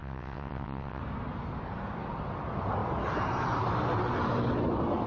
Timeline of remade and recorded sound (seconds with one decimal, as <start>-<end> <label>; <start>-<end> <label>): 0.0-1.0 remade; 1.0-5.1 recorded